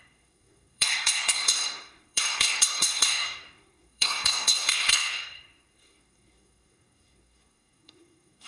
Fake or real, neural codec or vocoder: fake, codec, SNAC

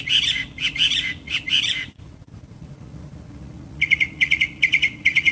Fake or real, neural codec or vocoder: fake, vocoder, Vocos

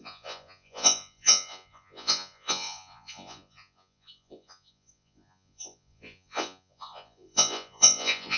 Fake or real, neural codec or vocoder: fake, vocoder, Vocos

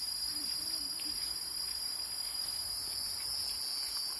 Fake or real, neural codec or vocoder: real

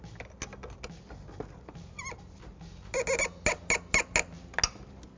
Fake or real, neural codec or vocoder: real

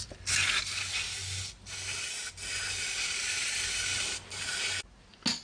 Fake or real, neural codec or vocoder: real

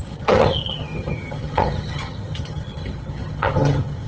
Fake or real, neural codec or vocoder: fake, vocoder, HiFi-GAN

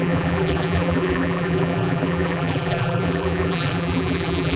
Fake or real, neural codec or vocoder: fake, vocoder, BigVGAN v2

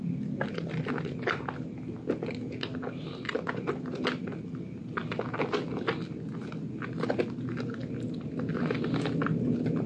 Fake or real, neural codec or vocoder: real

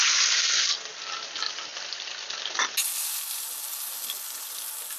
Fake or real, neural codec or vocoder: real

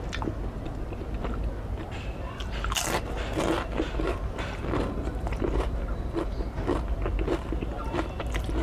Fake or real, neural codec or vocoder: real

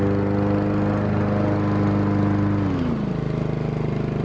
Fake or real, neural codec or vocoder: real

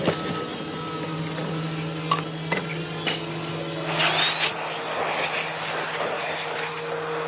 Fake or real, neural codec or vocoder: real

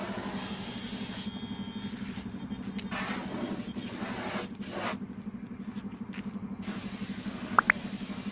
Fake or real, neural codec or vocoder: real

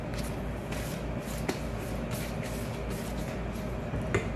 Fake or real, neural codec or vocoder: real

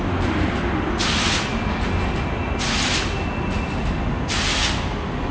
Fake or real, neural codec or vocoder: real